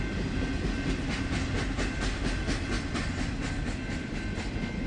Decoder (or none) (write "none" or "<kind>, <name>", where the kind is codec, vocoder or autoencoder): none